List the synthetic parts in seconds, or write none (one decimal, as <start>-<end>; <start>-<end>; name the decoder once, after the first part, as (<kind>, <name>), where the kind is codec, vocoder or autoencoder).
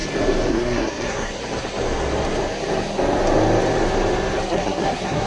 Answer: 0.5-1.3 (codec, SNAC); 4.5-5.3